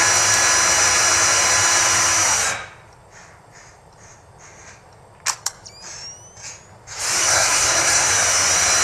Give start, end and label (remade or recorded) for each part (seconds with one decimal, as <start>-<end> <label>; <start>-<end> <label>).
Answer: 0.0-7.2 recorded; 7.2-8.1 remade; 8.1-8.8 recorded